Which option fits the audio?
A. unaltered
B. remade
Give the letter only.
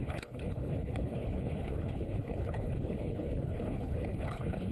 B